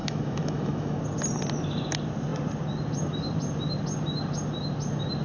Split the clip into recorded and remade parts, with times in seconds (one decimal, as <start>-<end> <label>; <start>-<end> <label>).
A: 0.0-1.0 remade; 1.0-5.2 recorded